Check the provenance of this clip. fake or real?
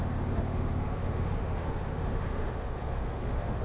fake